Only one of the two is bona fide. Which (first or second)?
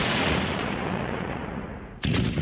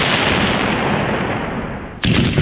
second